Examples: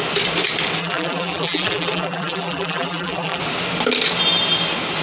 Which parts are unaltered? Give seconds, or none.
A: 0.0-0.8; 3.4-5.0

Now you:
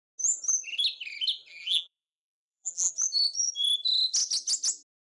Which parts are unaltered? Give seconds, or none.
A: 0.0-1.5; 2.9-5.1

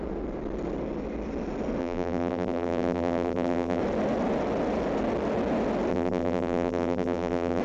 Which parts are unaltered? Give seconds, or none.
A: 0.0-1.8; 3.8-5.9

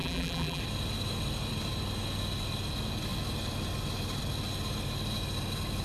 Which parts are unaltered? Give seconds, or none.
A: 0.6-5.8

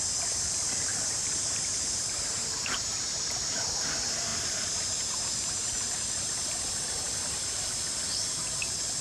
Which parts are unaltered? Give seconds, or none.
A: 0.0-0.9; 3.6-4.3; 7.7-9.0